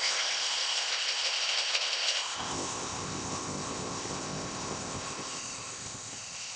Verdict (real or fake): fake